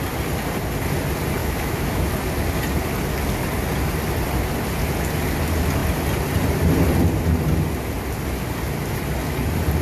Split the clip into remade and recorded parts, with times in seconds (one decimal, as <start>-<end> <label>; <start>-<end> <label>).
0.0-1.4 recorded; 1.4-2.1 remade; 2.1-9.8 recorded